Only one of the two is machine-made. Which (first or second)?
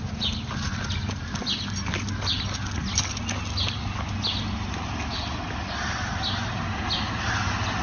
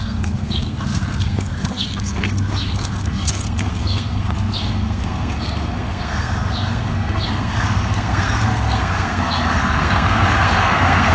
second